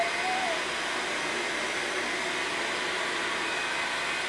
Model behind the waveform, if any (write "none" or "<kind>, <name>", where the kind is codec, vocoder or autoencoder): none